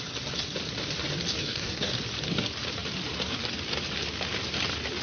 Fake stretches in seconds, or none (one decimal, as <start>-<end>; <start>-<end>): 1.4-1.9

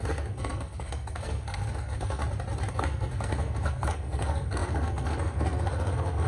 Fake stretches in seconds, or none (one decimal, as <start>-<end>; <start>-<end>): 0.0-2.2; 2.7-6.3